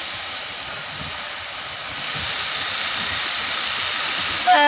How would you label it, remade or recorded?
recorded